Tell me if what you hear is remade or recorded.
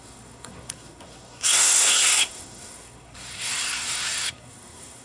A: remade